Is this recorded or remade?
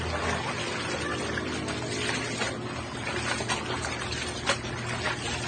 recorded